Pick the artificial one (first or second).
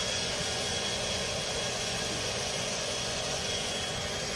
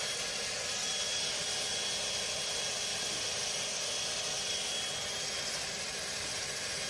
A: first